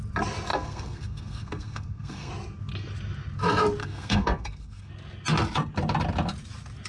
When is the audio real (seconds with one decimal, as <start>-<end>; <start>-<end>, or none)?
0.0-0.5; 2.3-3.8; 4.9-6.9